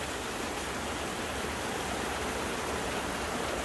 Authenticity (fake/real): fake